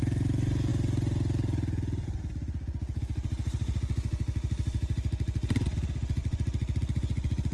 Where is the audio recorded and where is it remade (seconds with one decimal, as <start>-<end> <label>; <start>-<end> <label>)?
0.0-6.2 recorded; 6.2-6.8 remade; 6.8-7.5 recorded